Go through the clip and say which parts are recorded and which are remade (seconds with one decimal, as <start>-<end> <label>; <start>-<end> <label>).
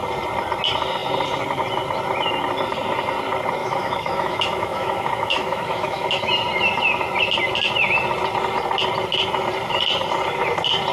0.0-3.6 recorded; 3.6-6.3 remade; 6.3-10.9 recorded